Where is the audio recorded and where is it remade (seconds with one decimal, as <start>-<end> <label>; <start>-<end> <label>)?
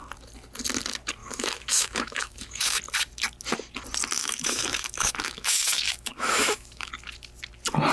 0.0-1.2 recorded; 1.2-2.8 remade; 2.8-4.2 recorded; 4.2-6.9 remade; 6.9-7.9 recorded